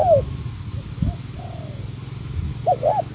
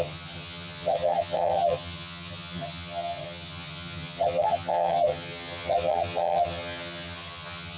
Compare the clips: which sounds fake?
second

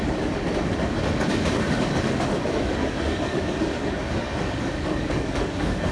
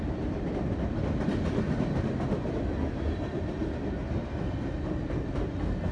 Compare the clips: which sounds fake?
first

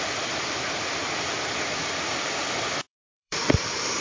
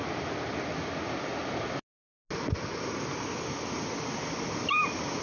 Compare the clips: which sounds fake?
first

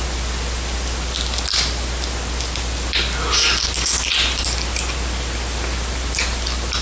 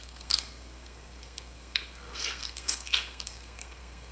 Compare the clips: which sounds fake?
second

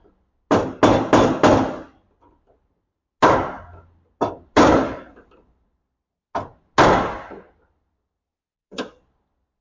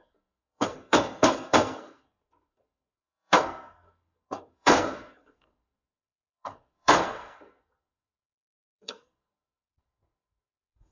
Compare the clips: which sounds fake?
second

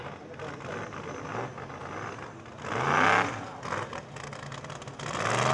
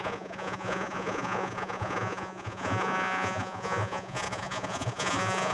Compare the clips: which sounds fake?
second